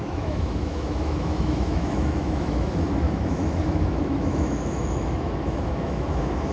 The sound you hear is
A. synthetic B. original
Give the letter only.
A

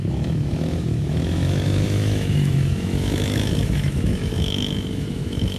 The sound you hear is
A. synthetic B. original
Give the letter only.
A